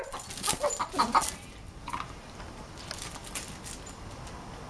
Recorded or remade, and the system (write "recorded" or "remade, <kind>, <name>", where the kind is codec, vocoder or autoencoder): recorded